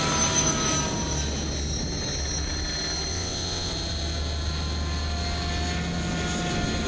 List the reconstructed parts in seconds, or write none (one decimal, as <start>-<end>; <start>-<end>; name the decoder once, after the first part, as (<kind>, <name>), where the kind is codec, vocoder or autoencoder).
3.1-3.7 (vocoder, WaveNeXt)